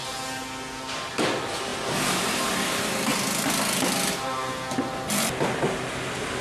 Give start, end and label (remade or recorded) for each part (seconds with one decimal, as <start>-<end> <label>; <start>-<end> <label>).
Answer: 0.0-6.4 recorded